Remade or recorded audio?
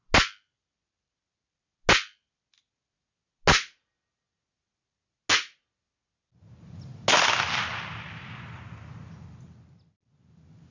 recorded